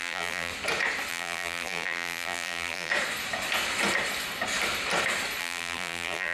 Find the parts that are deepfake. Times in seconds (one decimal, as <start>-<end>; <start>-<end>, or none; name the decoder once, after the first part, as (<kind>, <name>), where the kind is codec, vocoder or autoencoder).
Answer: 0.0-0.5 (vocoder, BigVGAN v2); 1.1-2.9; 5.4-6.3